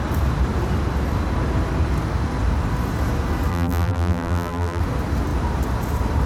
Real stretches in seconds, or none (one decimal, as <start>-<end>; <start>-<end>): 0.0-3.5; 4.8-6.3